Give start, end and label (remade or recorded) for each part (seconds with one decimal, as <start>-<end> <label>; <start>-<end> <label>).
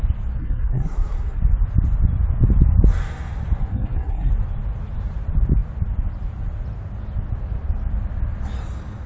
0.0-0.4 recorded; 0.4-1.4 remade; 1.4-3.7 recorded; 3.7-4.3 remade; 4.3-9.1 recorded